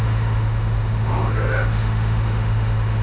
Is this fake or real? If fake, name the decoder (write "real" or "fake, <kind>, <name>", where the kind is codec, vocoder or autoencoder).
fake, autoencoder, DAC-VAE